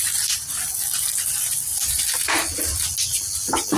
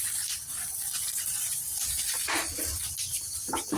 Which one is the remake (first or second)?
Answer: second